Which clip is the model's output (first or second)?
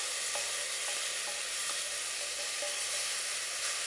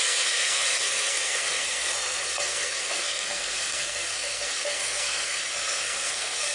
second